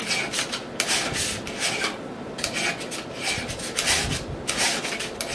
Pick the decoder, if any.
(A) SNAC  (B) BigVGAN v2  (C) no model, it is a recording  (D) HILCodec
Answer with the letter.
C